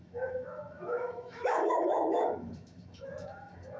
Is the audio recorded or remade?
remade